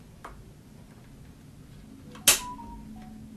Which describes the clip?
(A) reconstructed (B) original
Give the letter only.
B